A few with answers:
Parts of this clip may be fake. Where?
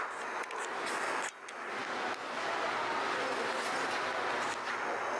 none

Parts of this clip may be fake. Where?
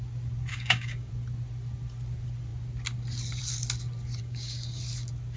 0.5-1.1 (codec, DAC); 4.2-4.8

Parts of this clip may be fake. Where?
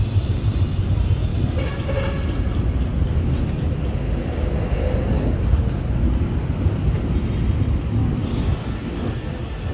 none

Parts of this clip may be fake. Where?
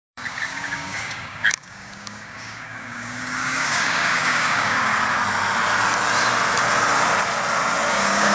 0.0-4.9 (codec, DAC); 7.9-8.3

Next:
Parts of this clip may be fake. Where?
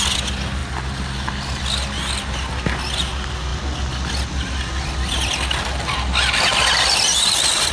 none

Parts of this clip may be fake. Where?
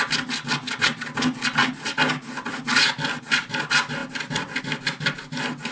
none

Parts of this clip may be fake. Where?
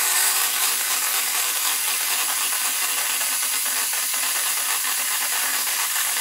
0.0-1.7 (codec, DAC); 5.4-6.2